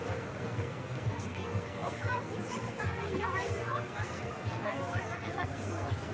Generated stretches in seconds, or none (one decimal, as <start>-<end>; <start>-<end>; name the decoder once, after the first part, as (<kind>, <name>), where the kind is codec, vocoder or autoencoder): 0.0-6.1 (codec, SNAC)